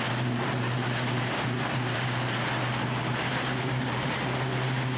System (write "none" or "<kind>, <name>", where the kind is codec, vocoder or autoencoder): none